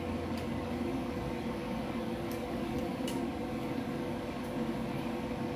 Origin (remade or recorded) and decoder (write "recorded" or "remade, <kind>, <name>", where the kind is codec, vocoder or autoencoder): remade, codec, DAC